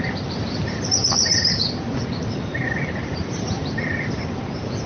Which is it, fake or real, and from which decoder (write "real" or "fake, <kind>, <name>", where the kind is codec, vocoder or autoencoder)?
real